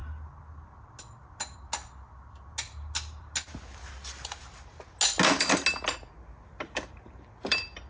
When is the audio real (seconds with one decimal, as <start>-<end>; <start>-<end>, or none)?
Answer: 0.0-3.9; 4.9-6.5